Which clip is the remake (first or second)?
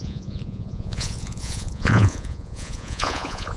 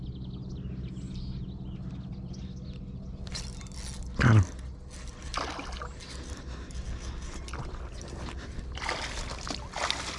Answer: first